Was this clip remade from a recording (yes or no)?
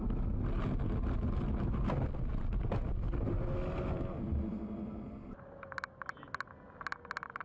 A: no